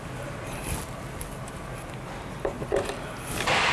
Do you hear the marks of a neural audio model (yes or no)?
no